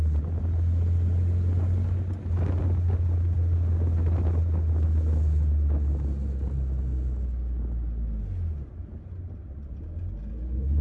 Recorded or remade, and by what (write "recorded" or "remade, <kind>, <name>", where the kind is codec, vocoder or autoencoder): recorded